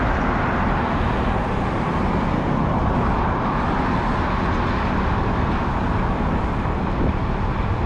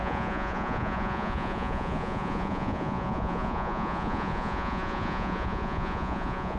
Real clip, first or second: first